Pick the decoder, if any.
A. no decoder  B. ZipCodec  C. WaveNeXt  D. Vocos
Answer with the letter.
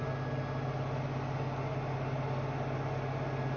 A